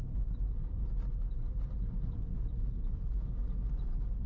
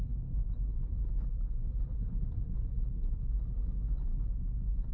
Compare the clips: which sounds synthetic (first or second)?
second